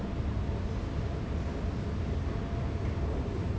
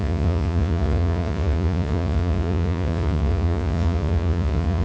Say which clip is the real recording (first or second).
first